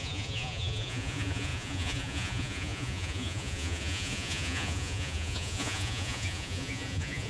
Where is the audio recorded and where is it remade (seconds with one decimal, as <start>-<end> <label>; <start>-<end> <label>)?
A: 0.0-7.3 remade